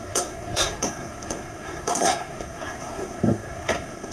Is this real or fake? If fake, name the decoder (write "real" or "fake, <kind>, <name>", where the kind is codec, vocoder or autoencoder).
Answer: fake, codec, SNAC